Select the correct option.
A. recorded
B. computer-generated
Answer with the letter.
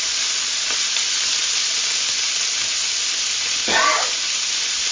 A